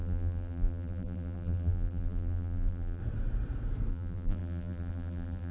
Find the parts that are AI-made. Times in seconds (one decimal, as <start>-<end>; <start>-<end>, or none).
0.0-3.0; 3.9-5.5

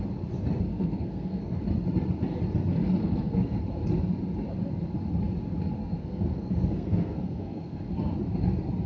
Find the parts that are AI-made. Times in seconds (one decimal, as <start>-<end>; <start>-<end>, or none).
0.7-1.6; 3.0-3.6; 5.8-7.8

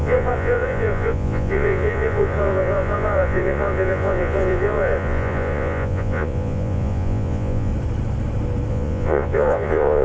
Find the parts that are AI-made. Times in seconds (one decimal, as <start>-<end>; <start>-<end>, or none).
0.0-7.7; 8.7-10.0

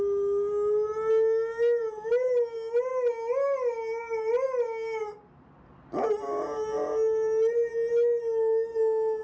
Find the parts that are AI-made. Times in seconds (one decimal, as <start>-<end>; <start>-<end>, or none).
none

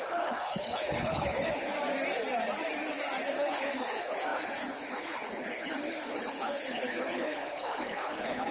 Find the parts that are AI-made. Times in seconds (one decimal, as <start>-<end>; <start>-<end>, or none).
0.0-1.7; 3.3-8.5

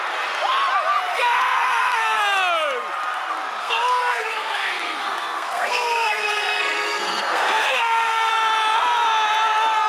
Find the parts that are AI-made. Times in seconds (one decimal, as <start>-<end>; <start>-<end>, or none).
1.1-2.2; 3.6-8.3

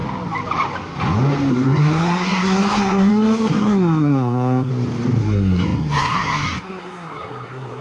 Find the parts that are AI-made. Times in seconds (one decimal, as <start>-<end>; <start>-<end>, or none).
1.5-4.7; 5.2-7.8